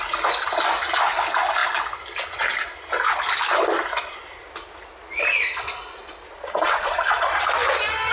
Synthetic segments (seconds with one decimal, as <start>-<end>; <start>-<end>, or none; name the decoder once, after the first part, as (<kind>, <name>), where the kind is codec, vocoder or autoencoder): 6.3-7.4 (vocoder, Vocos)